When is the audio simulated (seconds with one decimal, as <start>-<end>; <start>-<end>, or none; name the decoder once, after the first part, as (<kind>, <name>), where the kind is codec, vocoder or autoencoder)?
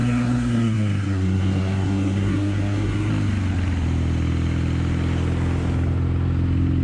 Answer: 0.0-3.1 (codec, SNAC)